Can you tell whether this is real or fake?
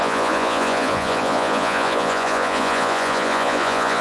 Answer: fake